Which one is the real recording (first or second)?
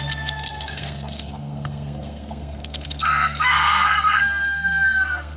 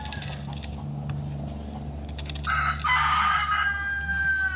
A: second